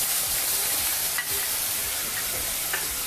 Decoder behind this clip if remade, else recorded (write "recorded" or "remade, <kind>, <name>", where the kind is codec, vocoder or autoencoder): recorded